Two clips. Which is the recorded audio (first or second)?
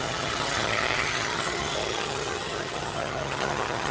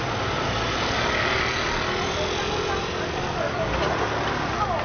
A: second